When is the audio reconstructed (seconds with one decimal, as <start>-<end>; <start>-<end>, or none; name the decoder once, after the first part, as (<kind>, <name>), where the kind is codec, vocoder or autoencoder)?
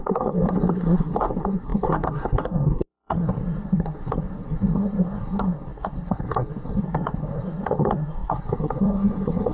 0.0-9.5 (codec, SNAC)